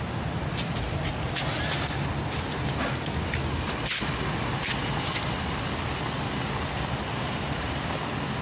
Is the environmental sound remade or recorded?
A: recorded